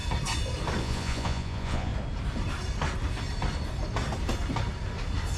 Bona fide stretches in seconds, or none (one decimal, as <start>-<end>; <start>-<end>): 0.0-0.8; 1.9-5.4